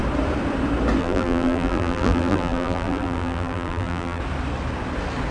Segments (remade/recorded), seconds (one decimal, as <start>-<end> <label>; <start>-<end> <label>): 0.0-1.0 recorded; 1.0-4.2 remade; 4.2-5.3 recorded